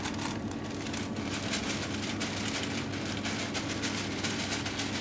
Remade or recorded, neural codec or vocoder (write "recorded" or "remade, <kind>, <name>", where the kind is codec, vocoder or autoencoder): recorded